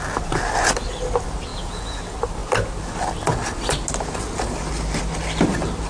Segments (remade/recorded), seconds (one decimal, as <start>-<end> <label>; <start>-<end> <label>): 0.0-1.5 recorded; 1.5-2.0 remade; 2.0-5.9 recorded